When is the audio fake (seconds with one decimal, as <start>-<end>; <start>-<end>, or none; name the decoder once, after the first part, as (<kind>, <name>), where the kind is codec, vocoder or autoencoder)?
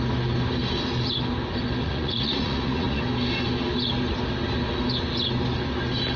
1.8-3.0 (vocoder, Vocos)